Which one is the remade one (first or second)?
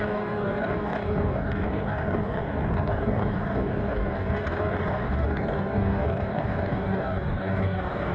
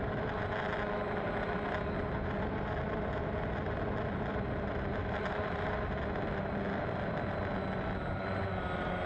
first